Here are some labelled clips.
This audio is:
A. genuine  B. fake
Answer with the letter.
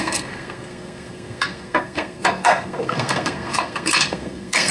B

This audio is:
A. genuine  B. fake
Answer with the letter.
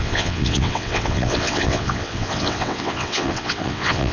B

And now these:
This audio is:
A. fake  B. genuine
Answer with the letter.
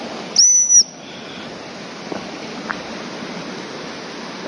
B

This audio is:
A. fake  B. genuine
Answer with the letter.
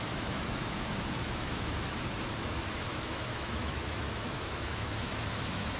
A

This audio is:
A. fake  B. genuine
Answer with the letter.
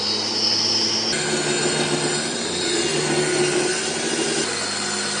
B